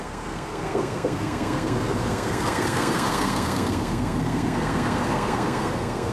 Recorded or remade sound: remade